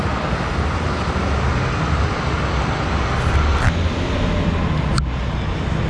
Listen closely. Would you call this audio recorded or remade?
recorded